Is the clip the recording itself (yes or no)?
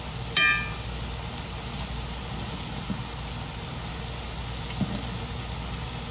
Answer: yes